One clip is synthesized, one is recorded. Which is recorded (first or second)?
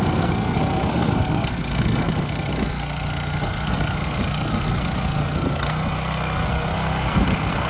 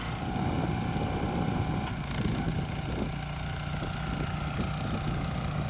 second